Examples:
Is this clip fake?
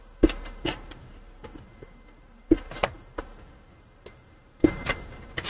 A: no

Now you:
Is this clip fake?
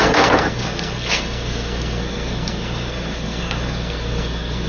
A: yes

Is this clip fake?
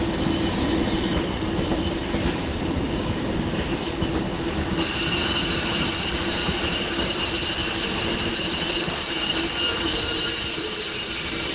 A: yes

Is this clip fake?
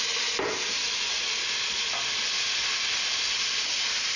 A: no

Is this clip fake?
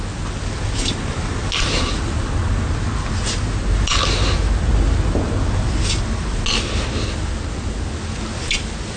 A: no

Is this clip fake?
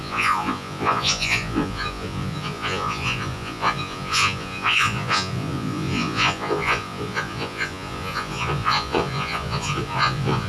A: yes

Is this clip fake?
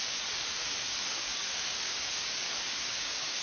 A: yes